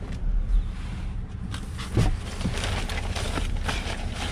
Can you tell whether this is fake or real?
real